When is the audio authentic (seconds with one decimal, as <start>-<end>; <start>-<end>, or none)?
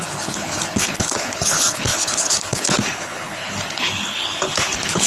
none